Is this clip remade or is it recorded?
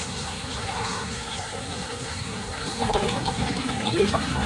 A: remade